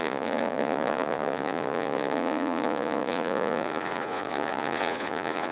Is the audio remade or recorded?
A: remade